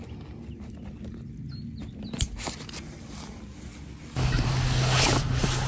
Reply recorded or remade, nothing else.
recorded